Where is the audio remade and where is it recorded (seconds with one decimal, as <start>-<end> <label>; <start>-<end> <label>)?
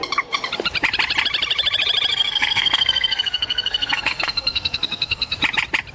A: 0.0-2.1 recorded; 2.1-5.4 remade; 5.4-5.9 recorded